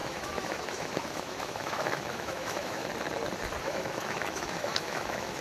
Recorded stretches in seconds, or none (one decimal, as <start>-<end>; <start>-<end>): 2.8-3.6